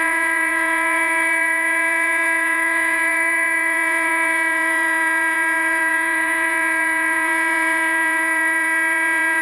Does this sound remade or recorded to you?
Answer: remade